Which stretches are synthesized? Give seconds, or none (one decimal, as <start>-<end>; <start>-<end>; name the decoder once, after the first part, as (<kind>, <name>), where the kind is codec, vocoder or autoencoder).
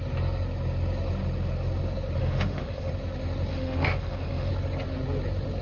2.2-2.9 (autoencoder, DAC-VAE); 3.5-4.5